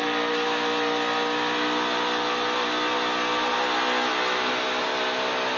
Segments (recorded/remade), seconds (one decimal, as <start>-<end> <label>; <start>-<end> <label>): 0.0-5.6 recorded